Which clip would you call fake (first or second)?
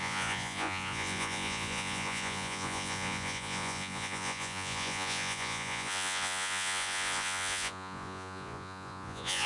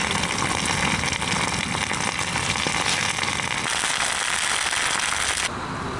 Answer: first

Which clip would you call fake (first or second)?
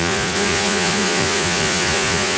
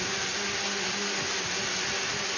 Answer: first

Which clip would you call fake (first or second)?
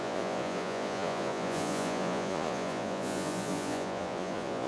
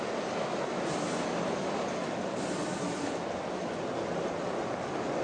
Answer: first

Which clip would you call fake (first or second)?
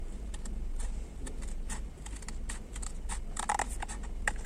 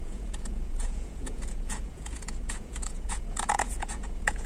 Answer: second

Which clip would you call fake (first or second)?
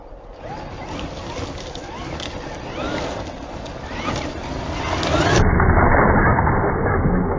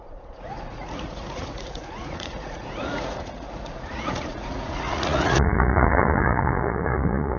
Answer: second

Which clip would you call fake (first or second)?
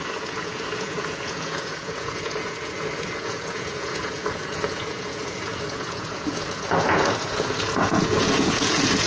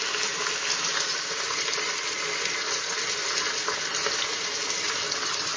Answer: first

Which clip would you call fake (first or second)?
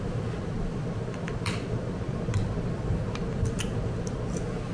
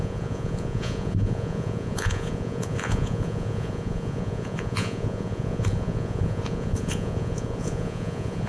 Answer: second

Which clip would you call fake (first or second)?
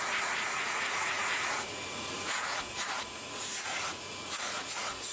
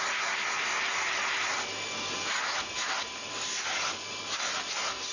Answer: first